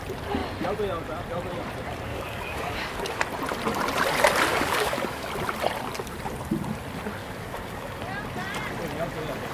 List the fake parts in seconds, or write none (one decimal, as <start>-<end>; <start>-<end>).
2.1-3.2; 4.5-5.3; 7.2-8.0